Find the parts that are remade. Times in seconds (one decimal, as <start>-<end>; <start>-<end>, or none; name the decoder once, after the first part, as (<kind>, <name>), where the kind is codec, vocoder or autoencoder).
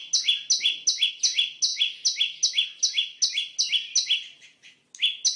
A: none